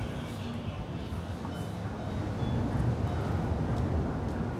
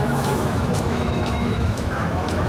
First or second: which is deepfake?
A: second